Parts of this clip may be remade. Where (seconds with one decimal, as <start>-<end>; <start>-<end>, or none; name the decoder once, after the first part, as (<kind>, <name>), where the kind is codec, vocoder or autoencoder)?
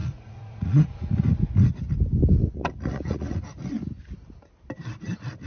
0.0-1.3 (vocoder, Vocos); 2.4-3.5